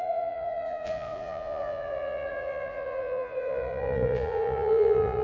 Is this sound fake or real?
fake